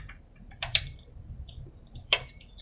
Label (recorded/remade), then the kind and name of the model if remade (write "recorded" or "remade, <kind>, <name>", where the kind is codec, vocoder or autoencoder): remade, vocoder, BigVGAN v2